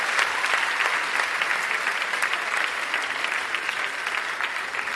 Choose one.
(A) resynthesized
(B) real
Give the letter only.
B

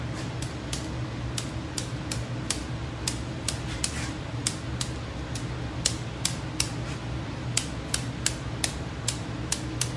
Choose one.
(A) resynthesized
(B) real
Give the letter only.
B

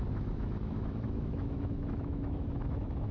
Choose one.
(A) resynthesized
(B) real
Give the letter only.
A